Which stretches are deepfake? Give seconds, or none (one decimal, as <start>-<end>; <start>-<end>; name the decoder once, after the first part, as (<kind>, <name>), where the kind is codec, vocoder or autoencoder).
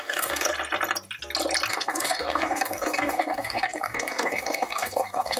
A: 0.0-0.5 (codec, DAC); 1.7-5.4